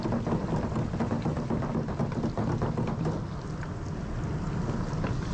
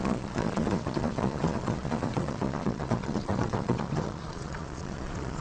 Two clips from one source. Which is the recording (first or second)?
first